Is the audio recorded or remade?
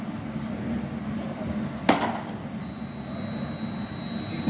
recorded